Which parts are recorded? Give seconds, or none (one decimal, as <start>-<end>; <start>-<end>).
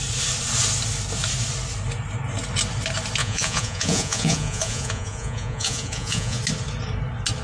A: 0.0-3.2; 6.4-7.4